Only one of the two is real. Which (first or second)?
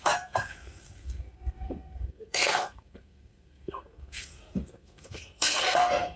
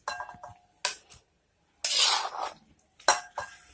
second